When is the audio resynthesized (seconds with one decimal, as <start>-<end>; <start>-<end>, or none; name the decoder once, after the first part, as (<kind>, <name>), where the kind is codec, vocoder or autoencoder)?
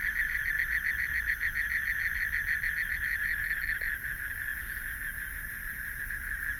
0.0-4.5 (vocoder, BigVGAN v2); 6.1-6.6